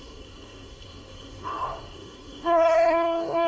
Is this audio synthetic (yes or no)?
yes